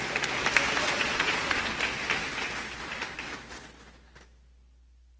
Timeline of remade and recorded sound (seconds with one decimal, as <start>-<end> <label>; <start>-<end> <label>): 0.0-0.8 recorded; 0.8-1.8 remade; 1.8-5.2 recorded